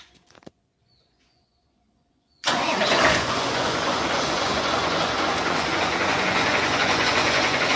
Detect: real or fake fake